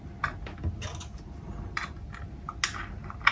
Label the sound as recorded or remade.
recorded